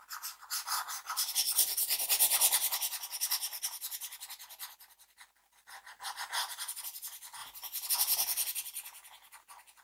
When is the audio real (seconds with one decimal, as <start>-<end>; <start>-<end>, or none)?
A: 0.0-9.8